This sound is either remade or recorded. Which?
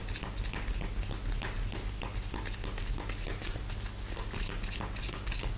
recorded